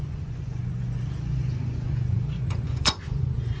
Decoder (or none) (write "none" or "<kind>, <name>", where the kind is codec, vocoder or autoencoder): vocoder, Vocos